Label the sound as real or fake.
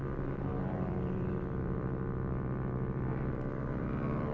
fake